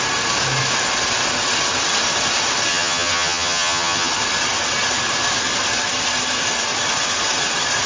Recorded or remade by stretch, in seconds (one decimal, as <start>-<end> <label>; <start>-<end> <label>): 0.0-2.7 recorded; 2.7-4.1 remade; 4.1-7.9 recorded